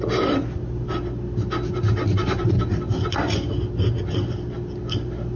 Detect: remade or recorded recorded